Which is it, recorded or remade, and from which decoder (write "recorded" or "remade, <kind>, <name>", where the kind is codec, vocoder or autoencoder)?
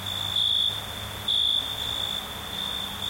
recorded